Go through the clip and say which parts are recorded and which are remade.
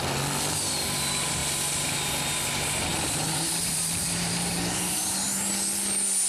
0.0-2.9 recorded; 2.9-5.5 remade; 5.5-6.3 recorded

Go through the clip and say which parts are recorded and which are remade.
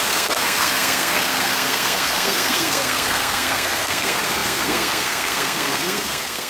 0.0-6.5 remade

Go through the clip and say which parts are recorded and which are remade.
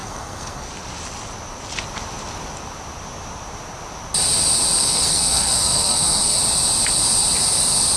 0.0-0.7 remade; 0.7-4.8 recorded; 4.8-6.4 remade; 6.4-8.0 recorded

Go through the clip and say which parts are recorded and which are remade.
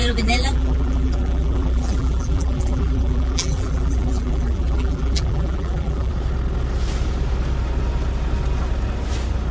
0.0-6.1 remade; 6.1-9.5 recorded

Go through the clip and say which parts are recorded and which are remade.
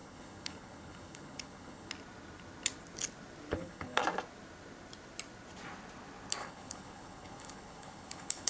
0.0-1.9 remade; 1.9-3.5 recorded; 3.5-4.0 remade; 4.0-6.4 recorded; 6.4-8.5 remade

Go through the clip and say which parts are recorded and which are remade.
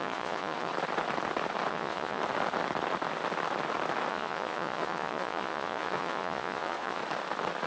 0.0-0.7 remade; 0.7-1.7 recorded; 1.7-2.2 remade; 2.2-4.1 recorded; 4.1-7.0 remade; 7.0-7.7 recorded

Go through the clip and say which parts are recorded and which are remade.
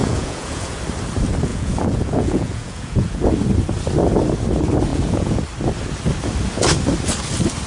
0.0-0.8 remade; 0.8-1.5 recorded; 1.5-3.3 remade; 3.3-4.9 recorded; 4.9-5.4 remade; 5.4-7.7 recorded